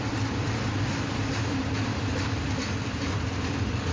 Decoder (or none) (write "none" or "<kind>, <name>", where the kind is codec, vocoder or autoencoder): none